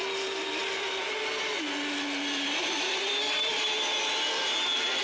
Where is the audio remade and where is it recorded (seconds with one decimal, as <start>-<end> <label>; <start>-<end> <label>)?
0.0-5.0 recorded